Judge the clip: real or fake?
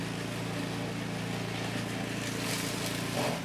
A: real